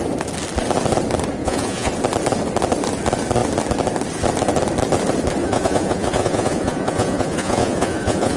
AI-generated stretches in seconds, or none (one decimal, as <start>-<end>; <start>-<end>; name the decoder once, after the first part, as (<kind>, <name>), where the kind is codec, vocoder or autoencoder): 1.4-1.9 (vocoder, Vocos); 5.4-8.4